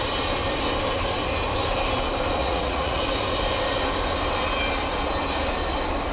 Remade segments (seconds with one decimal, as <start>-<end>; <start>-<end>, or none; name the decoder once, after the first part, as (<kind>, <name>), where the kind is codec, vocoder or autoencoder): 2.4-3.0 (vocoder, Vocos)